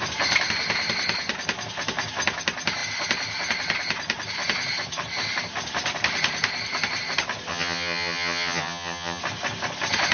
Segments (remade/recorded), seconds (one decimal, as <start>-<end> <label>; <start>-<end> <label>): 0.0-7.5 recorded; 7.5-9.2 remade; 9.2-10.1 recorded